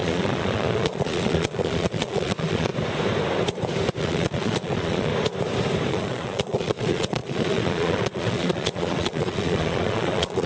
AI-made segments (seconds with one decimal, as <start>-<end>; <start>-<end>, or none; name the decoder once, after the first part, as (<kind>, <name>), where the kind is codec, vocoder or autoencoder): 0.0-2.7 (vocoder, Vocos); 4.0-5.1; 5.9-10.5